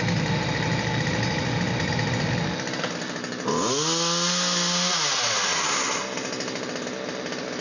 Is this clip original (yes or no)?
yes